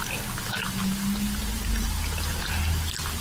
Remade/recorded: recorded